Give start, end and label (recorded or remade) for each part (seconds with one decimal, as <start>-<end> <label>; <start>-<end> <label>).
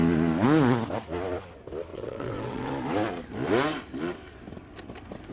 0.0-1.9 recorded; 1.9-2.7 remade; 2.7-5.3 recorded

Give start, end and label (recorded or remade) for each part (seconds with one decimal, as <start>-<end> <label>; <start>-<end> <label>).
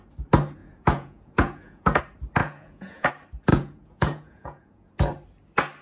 0.0-0.6 recorded; 0.6-2.0 remade; 2.0-2.4 recorded; 2.4-3.1 remade; 3.1-3.5 recorded; 3.5-4.9 remade; 4.9-5.8 recorded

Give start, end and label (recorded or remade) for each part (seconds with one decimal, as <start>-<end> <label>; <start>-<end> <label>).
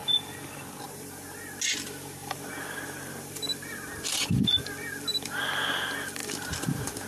0.0-0.8 remade; 0.8-2.2 recorded; 2.2-5.4 remade; 5.4-6.2 recorded; 6.2-7.1 remade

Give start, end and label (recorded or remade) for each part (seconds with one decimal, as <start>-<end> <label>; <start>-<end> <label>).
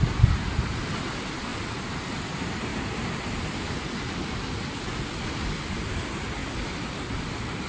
0.0-7.7 recorded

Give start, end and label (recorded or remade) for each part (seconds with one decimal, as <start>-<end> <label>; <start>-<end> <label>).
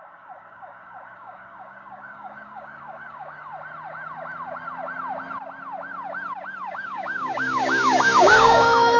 0.0-3.5 remade; 3.5-6.7 recorded; 6.7-9.0 remade